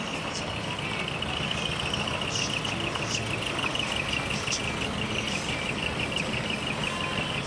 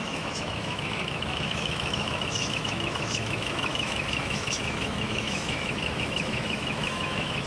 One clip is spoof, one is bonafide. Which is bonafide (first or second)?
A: first